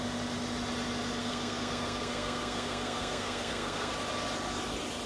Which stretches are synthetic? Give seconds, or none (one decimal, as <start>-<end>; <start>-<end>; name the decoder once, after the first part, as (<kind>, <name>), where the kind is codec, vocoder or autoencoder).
1.2-3.9 (codec, SNAC)